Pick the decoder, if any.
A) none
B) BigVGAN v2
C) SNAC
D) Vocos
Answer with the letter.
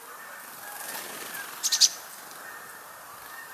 A